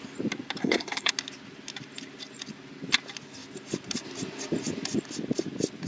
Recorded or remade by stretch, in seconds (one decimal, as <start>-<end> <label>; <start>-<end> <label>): 0.0-0.6 recorded; 0.6-1.1 remade; 1.1-5.9 recorded

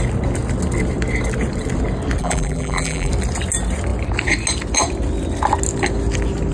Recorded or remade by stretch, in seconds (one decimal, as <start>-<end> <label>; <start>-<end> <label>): 0.0-2.2 recorded; 2.2-3.1 remade; 3.1-6.5 recorded

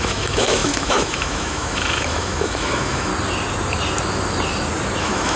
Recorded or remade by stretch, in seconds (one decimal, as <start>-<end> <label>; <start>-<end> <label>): 0.0-3.1 remade; 3.1-5.0 recorded; 5.0-5.4 remade

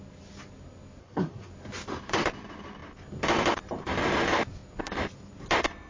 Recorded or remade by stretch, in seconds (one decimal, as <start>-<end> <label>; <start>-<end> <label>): 0.0-1.0 recorded; 1.0-1.5 remade; 1.5-5.9 recorded

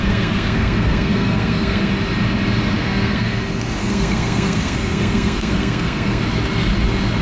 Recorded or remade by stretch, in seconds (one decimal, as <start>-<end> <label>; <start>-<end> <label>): 0.0-1.9 remade; 1.9-2.8 recorded; 2.8-3.4 remade; 3.4-3.8 recorded; 3.8-6.2 remade; 6.2-7.2 recorded

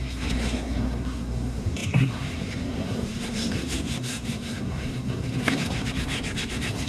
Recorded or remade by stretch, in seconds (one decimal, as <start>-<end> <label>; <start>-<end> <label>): 0.0-6.9 remade